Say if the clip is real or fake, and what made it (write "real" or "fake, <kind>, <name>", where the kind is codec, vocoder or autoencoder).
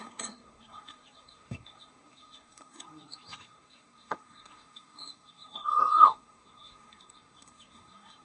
fake, codec, SNAC